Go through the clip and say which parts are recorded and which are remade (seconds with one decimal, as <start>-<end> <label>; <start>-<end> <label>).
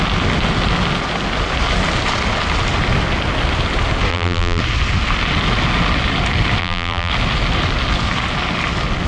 0.0-4.1 recorded; 4.1-4.6 remade; 4.6-6.6 recorded; 6.6-7.1 remade; 7.1-9.1 recorded